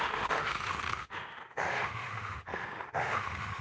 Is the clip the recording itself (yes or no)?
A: no